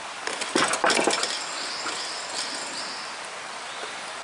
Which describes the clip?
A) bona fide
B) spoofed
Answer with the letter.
A